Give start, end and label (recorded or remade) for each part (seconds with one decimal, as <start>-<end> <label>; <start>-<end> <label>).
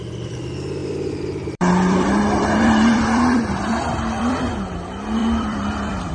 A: 0.0-0.8 recorded; 0.8-4.5 remade; 4.5-5.2 recorded; 5.2-6.1 remade